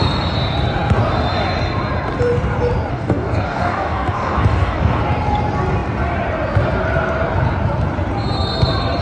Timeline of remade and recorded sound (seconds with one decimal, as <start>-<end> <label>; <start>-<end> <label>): 0.0-2.9 recorded; 2.9-5.0 remade; 5.0-9.0 recorded